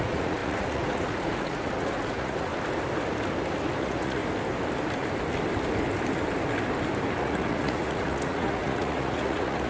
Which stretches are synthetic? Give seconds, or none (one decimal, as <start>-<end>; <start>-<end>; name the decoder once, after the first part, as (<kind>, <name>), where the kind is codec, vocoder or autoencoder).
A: 0.0-2.5 (vocoder, Vocos); 3.8-4.2; 7.2-9.7